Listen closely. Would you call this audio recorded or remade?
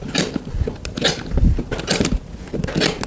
recorded